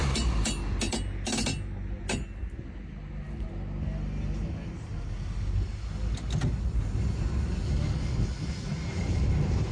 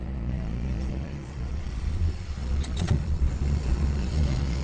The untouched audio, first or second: first